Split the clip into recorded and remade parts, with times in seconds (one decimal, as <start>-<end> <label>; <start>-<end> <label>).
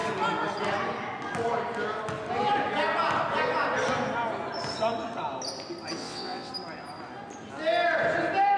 0.0-6.0 recorded; 6.0-6.5 remade; 6.5-8.6 recorded